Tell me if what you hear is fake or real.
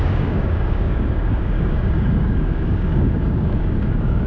fake